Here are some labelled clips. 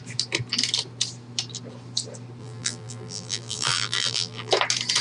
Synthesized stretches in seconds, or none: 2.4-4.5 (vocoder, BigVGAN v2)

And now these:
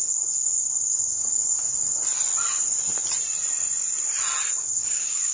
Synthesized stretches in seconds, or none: 0.0-1.4 (codec, DAC); 4.6-5.3